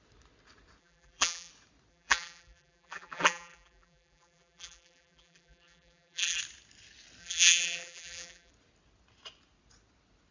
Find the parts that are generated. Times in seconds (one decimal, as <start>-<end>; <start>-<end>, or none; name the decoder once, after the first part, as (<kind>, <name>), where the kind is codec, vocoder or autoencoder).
0.8-1.5 (vocoder, BigVGAN v2); 1.9-6.4; 7.2-8.5